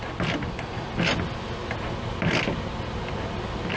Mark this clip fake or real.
real